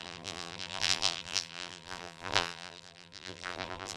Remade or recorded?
remade